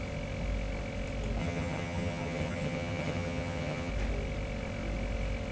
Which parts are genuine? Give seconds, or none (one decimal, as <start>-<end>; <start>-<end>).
0.0-1.4; 3.9-5.5